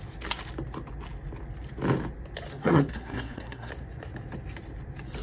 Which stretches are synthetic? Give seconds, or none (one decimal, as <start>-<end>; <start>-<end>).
2.5-3.7